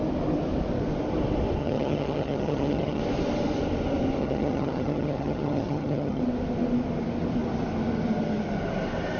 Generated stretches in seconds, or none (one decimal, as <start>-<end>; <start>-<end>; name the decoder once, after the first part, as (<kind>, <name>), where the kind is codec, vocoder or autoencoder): 1.6-3.0 (vocoder, HiFi-GAN); 4.2-6.2